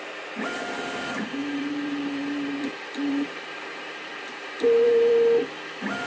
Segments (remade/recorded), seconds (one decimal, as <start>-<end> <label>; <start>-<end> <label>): 0.0-1.4 recorded; 1.4-5.1 remade; 5.1-6.1 recorded